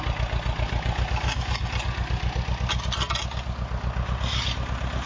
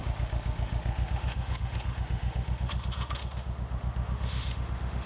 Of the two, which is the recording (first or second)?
first